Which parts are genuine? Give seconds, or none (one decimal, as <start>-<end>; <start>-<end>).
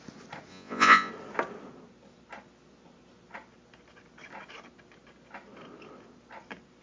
0.0-0.5; 1.1-6.8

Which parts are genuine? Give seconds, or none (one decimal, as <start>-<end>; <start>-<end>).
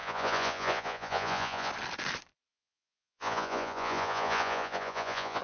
1.7-2.5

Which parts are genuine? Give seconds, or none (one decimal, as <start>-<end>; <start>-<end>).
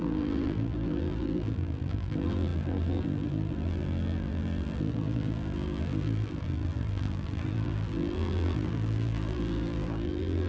none